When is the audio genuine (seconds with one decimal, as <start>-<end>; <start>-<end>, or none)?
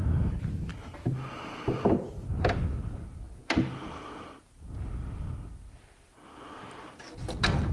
0.0-7.7